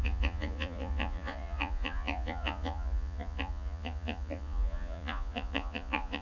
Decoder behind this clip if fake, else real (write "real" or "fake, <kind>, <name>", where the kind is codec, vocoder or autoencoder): fake, vocoder, Vocos